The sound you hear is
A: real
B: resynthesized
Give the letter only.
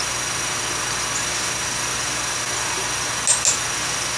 A